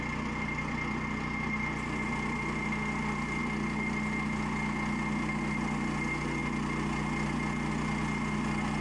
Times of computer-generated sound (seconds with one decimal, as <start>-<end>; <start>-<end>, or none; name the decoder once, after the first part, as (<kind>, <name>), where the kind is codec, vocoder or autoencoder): none